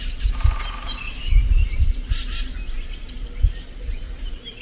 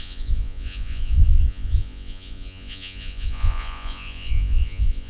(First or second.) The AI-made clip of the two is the second